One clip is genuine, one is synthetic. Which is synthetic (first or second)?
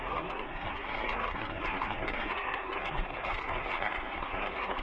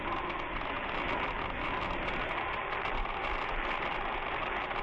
first